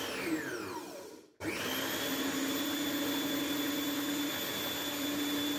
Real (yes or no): yes